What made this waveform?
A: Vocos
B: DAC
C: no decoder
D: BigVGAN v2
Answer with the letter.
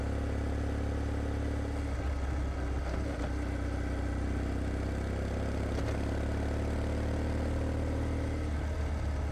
C